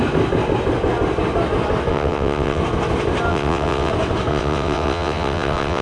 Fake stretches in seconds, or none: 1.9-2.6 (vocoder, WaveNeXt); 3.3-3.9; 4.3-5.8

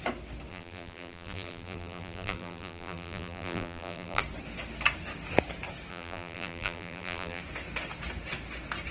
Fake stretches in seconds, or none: 0.5-4.2 (vocoder, BigVGAN v2); 5.9-7.4

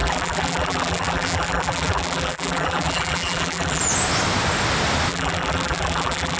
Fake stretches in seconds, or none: 0.0-3.8 (vocoder, BigVGAN v2); 5.1-6.4

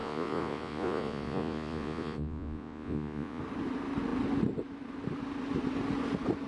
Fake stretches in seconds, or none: 0.0-3.4 (vocoder, Vocos)

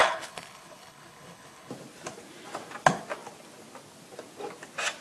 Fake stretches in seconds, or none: 0.0-1.7 (codec, HILCodec)

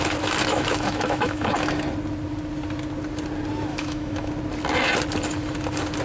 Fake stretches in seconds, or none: 0.5-1.5 (autoencoder, DAC-VAE); 3.7-4.3